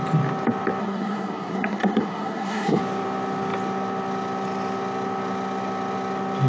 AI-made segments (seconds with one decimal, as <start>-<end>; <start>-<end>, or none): 0.8-2.8